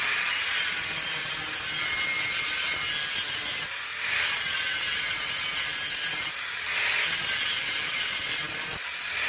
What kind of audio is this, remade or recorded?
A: recorded